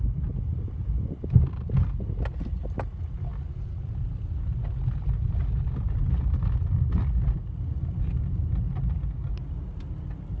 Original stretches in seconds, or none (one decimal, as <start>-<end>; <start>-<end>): 0.0-10.4